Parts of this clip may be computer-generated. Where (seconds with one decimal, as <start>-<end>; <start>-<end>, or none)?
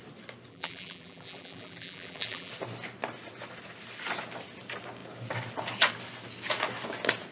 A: 0.5-2.5